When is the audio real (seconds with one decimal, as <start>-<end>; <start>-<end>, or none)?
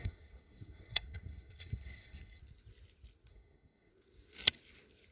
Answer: 2.4-3.3; 3.9-5.1